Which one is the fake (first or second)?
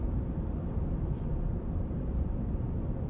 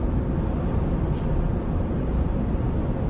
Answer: first